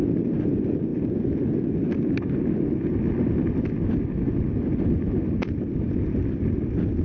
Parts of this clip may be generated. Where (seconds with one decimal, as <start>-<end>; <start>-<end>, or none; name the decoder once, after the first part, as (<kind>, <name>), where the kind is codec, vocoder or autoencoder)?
none